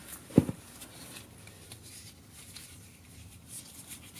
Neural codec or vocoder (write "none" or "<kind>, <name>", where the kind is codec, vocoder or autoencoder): none